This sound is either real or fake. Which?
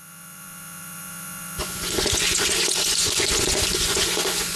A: fake